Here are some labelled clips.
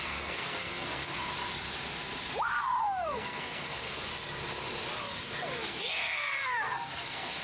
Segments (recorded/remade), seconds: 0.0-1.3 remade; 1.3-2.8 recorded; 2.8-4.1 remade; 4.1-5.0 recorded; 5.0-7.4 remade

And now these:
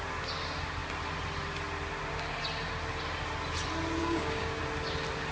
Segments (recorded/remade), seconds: 0.0-4.0 recorded; 4.0-4.6 remade; 4.6-5.3 recorded

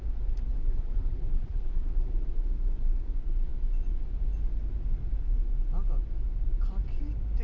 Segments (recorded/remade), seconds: 0.0-0.5 recorded; 0.5-2.1 remade; 2.1-7.4 recorded

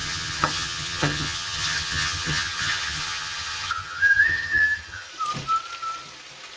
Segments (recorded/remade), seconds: 0.0-5.1 remade; 5.1-6.6 recorded

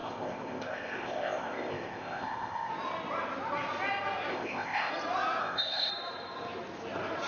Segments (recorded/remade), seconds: 0.0-2.7 remade; 2.7-4.3 recorded; 4.3-4.9 remade; 4.9-5.4 recorded; 5.4-5.9 remade; 5.9-7.3 recorded

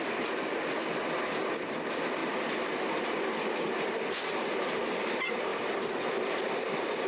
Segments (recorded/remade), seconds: 0.0-7.1 recorded

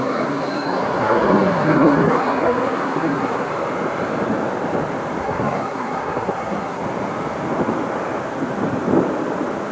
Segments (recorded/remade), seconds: 0.0-3.5 remade; 3.5-5.2 recorded; 5.2-6.8 remade; 6.8-9.7 recorded

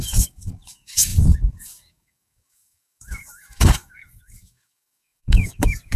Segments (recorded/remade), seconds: 0.0-6.0 remade